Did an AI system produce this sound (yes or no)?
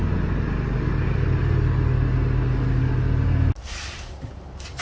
no